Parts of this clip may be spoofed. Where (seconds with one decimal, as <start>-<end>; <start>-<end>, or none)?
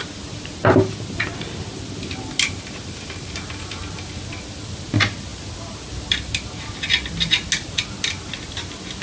none